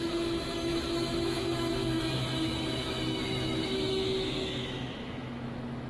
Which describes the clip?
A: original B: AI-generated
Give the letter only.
B